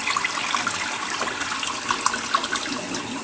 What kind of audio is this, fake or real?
real